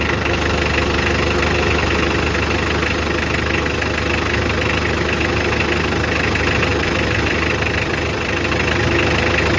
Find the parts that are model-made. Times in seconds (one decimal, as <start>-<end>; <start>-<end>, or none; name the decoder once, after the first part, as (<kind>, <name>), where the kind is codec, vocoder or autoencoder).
6.7-8.5 (vocoder, BigVGAN v2)